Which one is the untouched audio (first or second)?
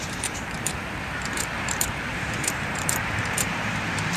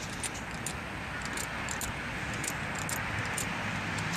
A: second